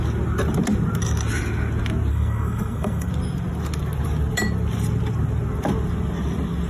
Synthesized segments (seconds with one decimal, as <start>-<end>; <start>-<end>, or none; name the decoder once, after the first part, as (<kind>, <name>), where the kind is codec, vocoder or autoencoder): 2.1-3.1 (codec, SNAC)